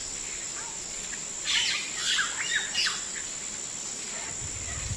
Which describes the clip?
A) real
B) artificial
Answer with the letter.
A